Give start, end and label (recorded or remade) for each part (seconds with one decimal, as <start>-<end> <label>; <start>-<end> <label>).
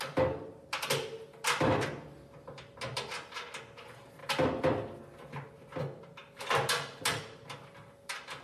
0.0-8.4 recorded